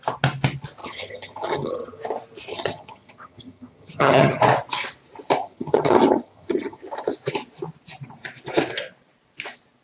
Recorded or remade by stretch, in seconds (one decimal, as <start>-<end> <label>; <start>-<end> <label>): 0.0-0.8 recorded; 0.8-2.0 remade; 2.0-2.5 recorded; 2.5-4.4 remade; 4.4-5.4 recorded; 5.4-6.8 remade; 6.8-9.8 recorded